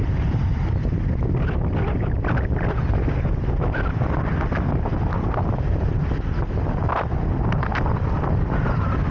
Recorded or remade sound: recorded